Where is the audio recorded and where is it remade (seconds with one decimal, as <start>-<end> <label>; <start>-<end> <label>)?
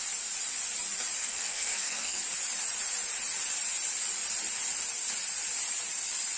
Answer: 0.0-1.2 recorded; 1.2-2.2 remade; 2.2-6.4 recorded